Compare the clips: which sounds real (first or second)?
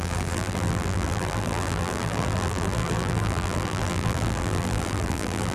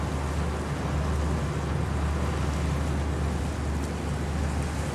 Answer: second